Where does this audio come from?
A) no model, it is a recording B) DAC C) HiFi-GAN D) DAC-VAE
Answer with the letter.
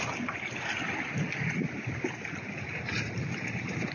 A